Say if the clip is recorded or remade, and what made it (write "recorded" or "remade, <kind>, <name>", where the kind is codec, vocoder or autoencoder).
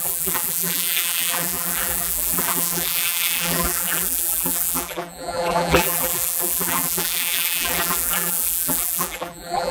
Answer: remade, vocoder, BigVGAN v2